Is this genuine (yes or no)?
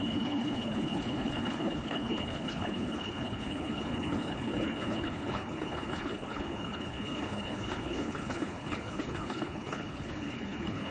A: no